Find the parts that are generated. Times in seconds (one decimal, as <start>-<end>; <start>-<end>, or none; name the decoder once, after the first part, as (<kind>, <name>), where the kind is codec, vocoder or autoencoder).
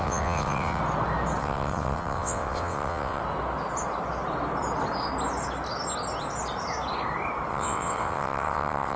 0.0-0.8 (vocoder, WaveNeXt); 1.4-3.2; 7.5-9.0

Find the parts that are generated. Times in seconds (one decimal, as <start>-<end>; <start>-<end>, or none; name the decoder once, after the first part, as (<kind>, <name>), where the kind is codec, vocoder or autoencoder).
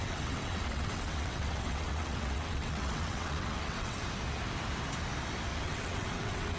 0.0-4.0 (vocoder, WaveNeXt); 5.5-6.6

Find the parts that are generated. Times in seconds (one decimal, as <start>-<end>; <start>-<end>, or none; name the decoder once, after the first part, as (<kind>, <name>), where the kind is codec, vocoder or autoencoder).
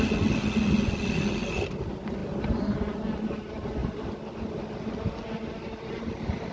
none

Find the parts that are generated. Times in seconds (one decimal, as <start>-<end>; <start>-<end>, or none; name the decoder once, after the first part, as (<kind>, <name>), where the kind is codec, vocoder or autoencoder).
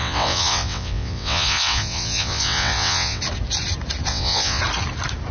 0.0-3.2 (vocoder, WaveNeXt); 4.1-4.6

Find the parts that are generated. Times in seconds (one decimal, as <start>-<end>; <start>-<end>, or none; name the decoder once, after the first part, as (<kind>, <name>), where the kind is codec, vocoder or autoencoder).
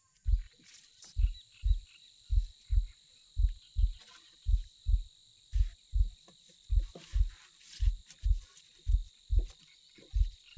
none